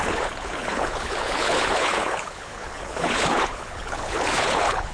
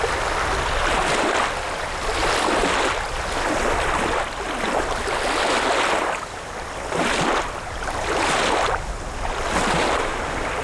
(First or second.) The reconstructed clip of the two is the first